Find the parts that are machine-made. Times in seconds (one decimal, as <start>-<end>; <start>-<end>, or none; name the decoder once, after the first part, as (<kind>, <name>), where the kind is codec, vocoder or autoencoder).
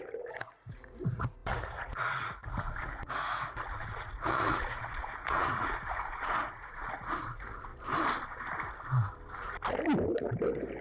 0.0-7.7 (vocoder, Vocos)